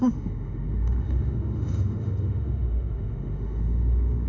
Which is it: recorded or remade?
remade